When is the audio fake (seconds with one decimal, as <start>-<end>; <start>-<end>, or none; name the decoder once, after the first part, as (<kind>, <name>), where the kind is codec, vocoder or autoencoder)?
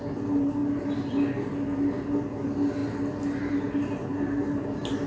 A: none